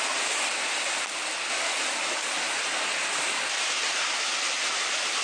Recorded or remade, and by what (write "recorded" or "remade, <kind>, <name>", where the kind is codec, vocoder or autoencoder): recorded